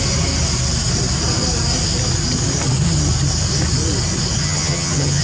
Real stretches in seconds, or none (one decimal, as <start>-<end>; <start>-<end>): 0.0-4.4